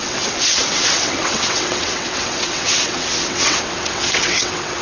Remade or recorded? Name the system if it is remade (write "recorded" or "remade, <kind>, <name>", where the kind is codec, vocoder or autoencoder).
remade, vocoder, WaveNeXt